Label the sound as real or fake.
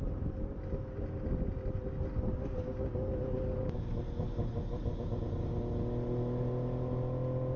real